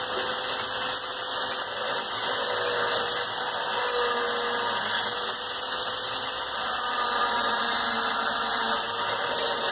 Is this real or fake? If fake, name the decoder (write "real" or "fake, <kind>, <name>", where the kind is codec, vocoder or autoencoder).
real